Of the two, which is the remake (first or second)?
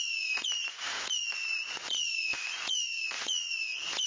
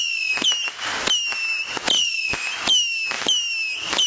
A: first